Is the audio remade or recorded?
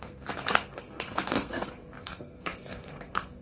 remade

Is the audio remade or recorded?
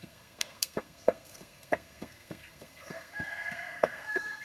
remade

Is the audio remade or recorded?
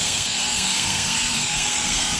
remade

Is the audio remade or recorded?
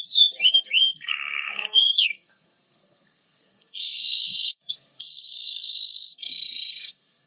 remade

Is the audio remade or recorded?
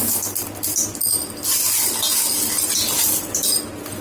recorded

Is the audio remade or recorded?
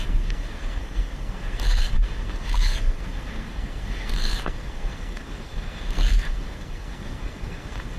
remade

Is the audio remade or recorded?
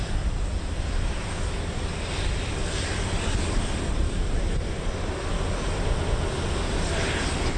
recorded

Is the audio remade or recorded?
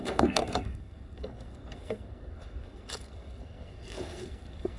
remade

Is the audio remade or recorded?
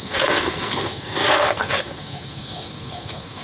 remade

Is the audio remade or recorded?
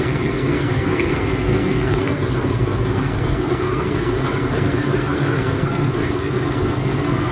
remade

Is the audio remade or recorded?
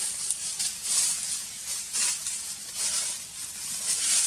recorded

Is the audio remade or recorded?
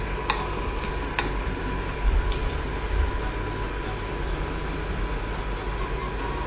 recorded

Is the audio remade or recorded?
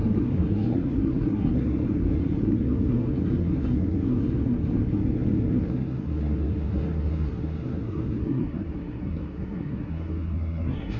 remade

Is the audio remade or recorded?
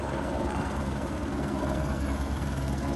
remade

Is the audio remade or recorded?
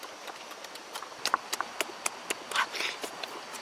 recorded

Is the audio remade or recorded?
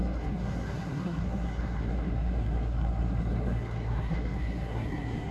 remade